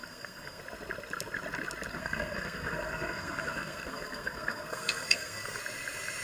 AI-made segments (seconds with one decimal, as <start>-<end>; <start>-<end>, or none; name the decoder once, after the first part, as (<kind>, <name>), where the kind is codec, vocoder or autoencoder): 0.0-0.6 (codec, SNAC); 1.9-5.6